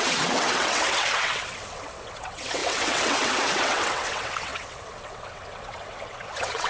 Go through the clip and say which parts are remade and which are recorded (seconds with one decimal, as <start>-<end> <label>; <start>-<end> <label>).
0.0-6.7 remade